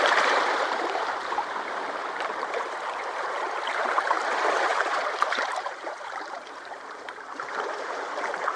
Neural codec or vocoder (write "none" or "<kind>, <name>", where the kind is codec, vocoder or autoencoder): none